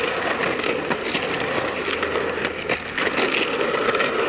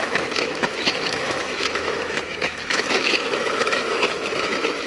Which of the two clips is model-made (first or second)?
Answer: second